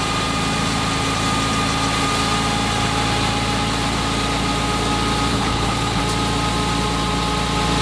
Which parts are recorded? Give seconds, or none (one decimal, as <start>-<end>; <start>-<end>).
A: 0.0-5.3; 6.0-7.8